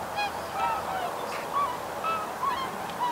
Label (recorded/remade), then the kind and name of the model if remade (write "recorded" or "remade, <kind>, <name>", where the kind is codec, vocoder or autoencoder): recorded